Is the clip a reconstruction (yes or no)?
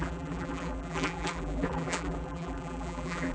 yes